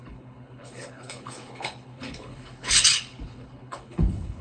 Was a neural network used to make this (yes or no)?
yes